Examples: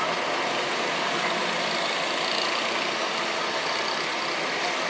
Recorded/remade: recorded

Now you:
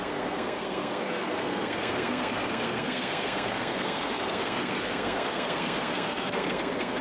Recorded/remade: remade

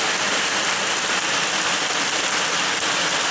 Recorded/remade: recorded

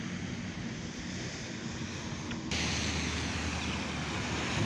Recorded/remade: recorded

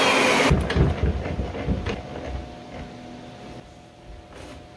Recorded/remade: recorded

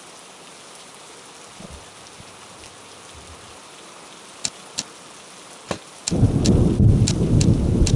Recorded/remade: recorded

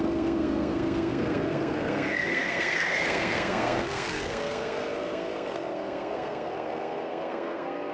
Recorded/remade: remade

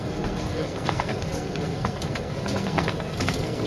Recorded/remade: remade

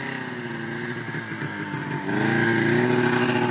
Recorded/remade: recorded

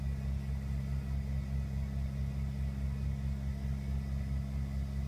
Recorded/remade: recorded